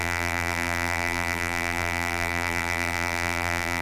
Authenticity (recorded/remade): remade